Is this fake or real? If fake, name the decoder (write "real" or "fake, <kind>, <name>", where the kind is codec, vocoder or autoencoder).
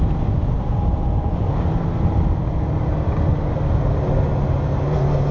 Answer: real